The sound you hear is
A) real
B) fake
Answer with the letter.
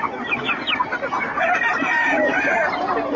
A